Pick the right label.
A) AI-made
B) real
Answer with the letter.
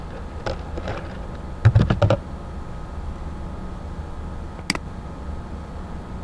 B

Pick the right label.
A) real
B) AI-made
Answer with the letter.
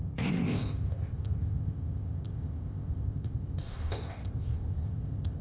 B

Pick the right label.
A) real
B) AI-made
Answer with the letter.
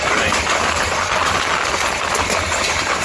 A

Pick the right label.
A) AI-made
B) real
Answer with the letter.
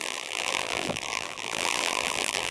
A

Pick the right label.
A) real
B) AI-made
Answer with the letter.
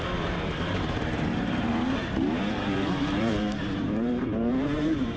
B